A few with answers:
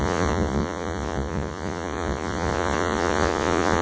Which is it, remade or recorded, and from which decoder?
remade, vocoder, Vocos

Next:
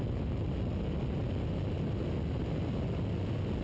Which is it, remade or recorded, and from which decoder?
recorded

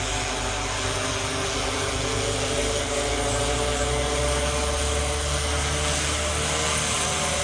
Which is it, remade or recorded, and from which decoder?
recorded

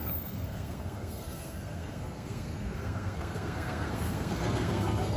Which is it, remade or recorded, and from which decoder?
remade, codec, SNAC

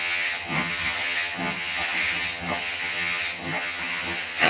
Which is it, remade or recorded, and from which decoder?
remade, vocoder, HiFi-GAN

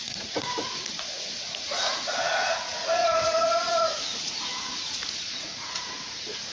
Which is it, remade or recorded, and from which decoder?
remade, vocoder, Vocos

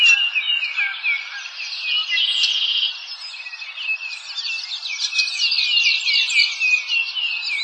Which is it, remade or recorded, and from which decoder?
recorded